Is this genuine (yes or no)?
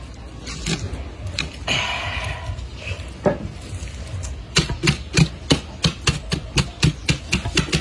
yes